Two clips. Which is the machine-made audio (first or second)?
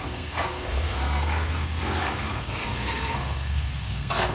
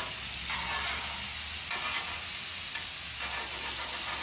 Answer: first